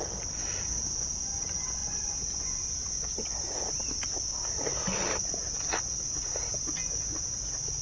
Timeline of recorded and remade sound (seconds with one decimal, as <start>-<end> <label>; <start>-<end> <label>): 0.0-1.8 recorded; 1.8-3.1 remade; 3.1-7.8 recorded